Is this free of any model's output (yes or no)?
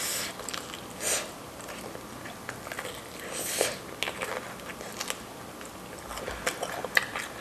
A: yes